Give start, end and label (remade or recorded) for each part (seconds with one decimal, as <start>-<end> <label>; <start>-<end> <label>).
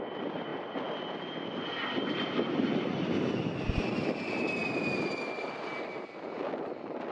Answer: 0.0-7.1 recorded